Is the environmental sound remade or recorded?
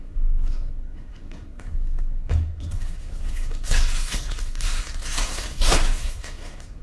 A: remade